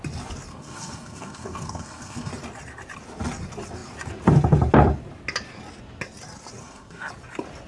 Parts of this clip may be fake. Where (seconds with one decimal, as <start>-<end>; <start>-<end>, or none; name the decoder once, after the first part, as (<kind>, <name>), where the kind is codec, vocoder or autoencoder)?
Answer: 0.5-2.3 (codec, SNAC); 6.6-7.1